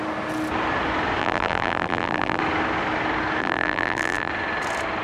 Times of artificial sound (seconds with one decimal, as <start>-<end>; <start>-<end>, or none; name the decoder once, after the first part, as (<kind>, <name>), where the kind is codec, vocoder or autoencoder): 1.2-2.4 (vocoder, BigVGAN v2); 3.4-4.3